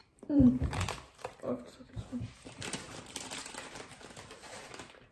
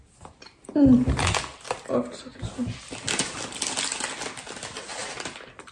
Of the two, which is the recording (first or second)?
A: second